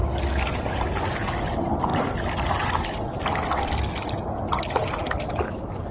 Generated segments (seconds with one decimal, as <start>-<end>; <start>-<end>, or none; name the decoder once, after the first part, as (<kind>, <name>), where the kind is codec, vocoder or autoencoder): none